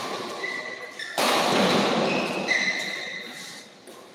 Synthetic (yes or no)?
no